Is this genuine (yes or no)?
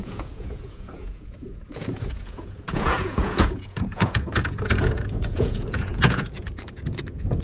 no